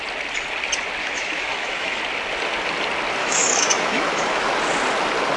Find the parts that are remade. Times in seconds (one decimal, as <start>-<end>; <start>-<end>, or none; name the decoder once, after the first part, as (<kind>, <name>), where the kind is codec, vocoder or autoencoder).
1.0-2.0 (autoencoder, DAC-VAE); 3.2-4.5

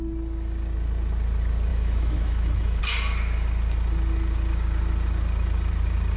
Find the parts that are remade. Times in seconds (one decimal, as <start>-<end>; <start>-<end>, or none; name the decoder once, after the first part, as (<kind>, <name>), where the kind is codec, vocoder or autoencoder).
1.7-2.8 (autoencoder, DAC-VAE)

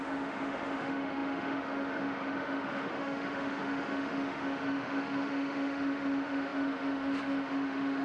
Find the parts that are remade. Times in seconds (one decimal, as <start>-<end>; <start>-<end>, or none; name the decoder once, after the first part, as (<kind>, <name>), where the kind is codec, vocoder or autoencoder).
0.0-8.0 (autoencoder, DAC-VAE)

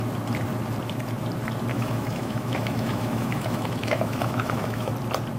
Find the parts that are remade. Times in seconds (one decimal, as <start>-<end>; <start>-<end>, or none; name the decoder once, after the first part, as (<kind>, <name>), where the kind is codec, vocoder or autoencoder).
1.7-4.9 (autoencoder, DAC-VAE)

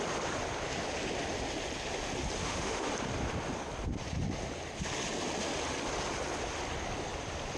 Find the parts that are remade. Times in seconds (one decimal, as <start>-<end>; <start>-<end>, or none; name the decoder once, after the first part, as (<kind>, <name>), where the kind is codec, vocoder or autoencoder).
2.4-2.9 (autoencoder, DAC-VAE)

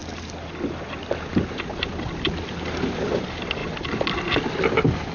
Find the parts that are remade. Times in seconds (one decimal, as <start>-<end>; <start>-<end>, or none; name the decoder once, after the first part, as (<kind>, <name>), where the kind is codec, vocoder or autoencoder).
none

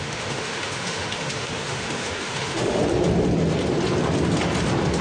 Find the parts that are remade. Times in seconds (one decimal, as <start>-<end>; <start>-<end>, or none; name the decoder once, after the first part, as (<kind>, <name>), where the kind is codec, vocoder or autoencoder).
0.0-2.8 (autoencoder, DAC-VAE)